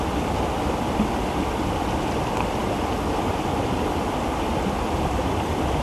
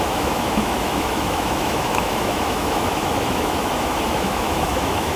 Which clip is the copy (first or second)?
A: second